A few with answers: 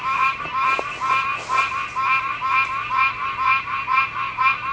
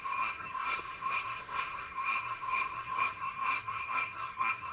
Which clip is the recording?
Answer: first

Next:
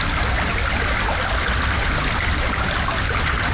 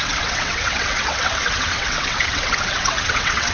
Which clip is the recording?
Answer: first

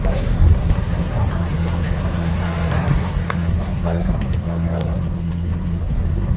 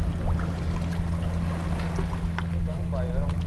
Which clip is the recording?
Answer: second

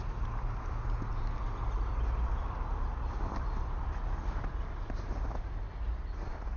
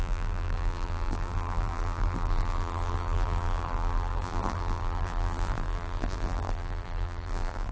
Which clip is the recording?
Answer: first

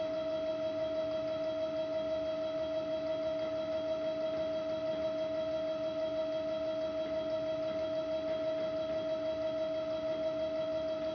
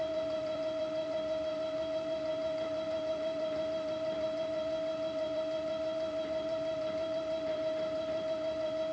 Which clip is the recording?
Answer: first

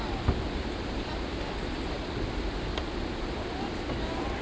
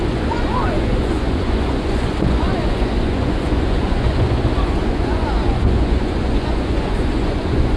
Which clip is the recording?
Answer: first